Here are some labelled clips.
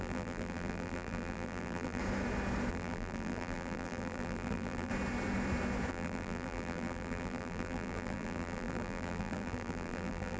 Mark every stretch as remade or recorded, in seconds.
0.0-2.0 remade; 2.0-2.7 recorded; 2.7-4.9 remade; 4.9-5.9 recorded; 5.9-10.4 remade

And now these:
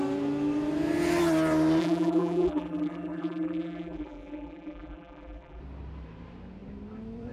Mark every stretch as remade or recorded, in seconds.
0.0-1.8 recorded; 1.8-5.6 remade; 5.6-7.3 recorded